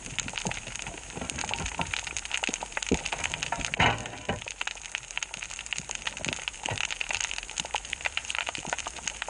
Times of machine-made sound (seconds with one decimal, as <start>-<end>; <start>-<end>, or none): 8.2-8.8